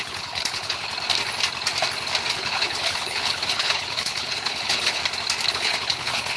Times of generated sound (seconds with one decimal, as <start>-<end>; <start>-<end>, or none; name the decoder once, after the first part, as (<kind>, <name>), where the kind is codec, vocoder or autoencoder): 0.0-0.9 (codec, HILCodec); 2.4-5.0; 5.5-6.4